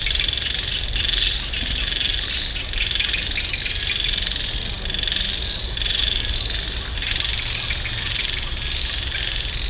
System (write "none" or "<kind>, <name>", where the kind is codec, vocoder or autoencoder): none